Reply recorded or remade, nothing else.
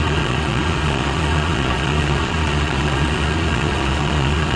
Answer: remade